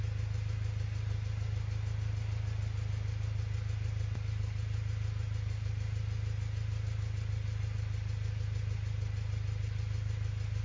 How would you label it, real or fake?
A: real